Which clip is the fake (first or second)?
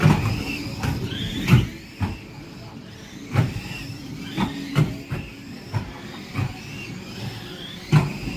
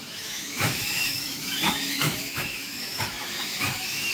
second